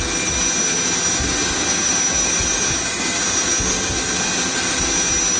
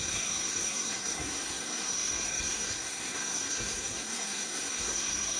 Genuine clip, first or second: first